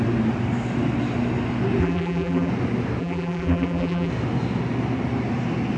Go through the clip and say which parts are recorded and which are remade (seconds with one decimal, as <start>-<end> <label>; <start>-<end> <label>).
0.0-1.8 recorded; 1.8-2.5 remade; 2.5-3.0 recorded; 3.0-4.1 remade; 4.1-5.8 recorded